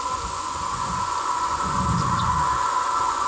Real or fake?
fake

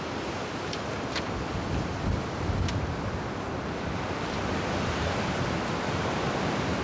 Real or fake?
real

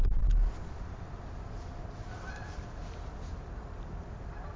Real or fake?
real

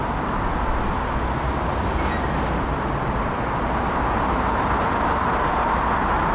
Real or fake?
real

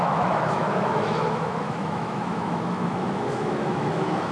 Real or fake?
fake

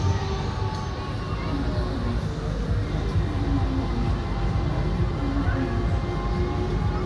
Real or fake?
real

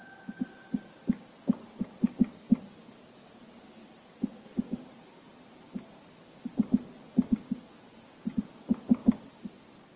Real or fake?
real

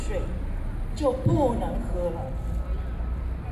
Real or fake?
real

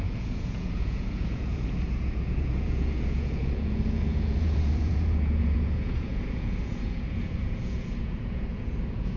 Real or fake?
fake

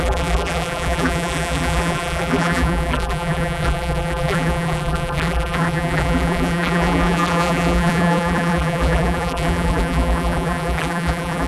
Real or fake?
fake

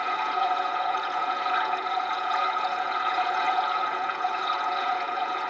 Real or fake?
fake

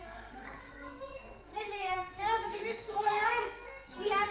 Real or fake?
fake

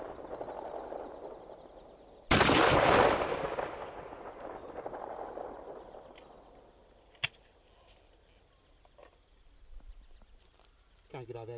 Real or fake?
real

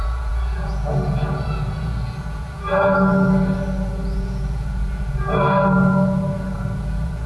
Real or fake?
fake